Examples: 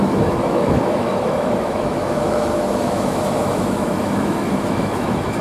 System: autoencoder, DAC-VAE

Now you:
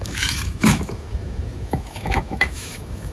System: autoencoder, DAC-VAE